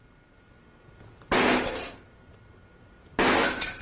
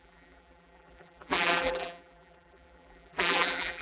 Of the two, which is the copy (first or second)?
second